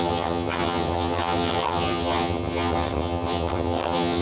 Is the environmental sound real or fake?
fake